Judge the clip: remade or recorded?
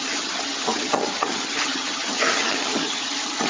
remade